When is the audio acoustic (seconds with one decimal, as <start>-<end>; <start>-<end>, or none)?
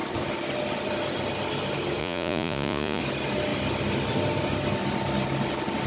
0.0-2.0; 3.0-5.9